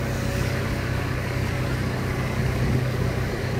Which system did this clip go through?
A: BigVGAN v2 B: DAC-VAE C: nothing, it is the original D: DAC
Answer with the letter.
D